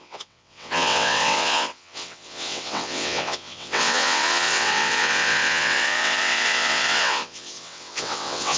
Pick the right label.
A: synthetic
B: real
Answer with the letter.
A